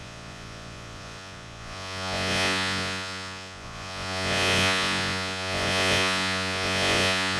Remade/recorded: remade